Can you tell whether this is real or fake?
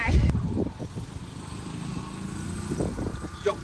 real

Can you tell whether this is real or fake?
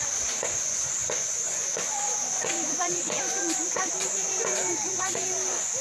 fake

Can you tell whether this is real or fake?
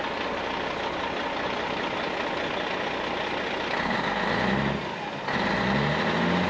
real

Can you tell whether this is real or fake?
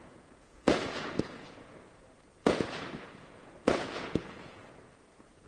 fake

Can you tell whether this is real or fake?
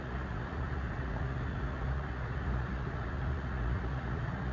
fake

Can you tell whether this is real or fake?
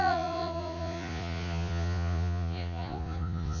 fake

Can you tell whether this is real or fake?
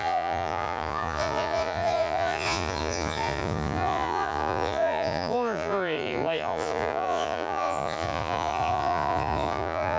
fake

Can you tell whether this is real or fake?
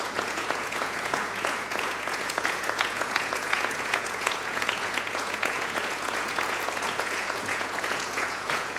fake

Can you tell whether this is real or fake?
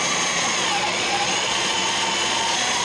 fake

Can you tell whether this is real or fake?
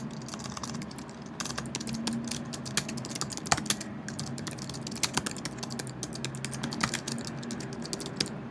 real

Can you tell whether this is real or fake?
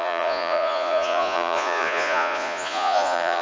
fake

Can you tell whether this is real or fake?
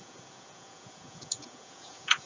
fake